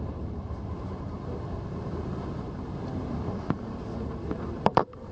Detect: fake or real fake